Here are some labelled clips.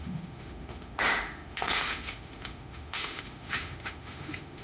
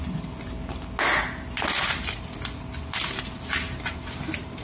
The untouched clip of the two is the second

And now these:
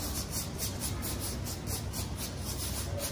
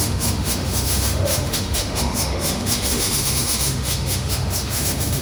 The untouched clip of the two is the first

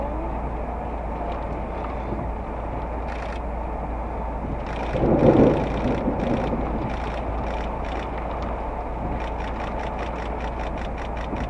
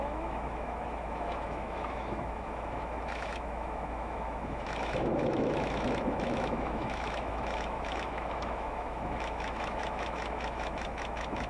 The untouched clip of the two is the first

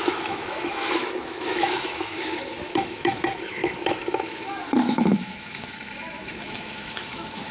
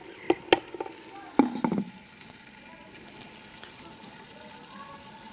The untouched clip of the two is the second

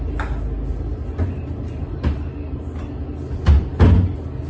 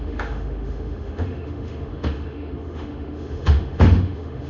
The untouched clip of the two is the first